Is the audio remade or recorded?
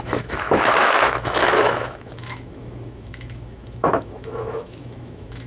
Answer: remade